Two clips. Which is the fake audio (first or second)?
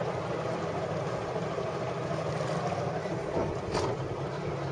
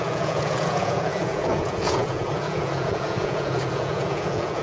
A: second